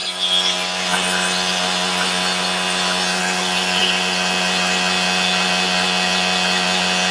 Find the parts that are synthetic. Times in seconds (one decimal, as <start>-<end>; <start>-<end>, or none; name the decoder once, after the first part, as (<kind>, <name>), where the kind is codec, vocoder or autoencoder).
none